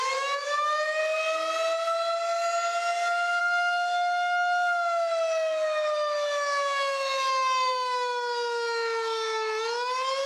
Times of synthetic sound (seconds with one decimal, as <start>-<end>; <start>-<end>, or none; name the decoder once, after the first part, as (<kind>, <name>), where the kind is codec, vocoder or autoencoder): 0.0-1.0 (autoencoder, DAC-VAE); 3.4-10.3